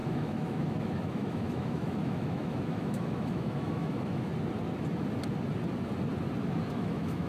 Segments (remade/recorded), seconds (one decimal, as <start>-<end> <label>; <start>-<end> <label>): 0.0-4.3 remade; 4.3-6.7 recorded; 6.7-7.3 remade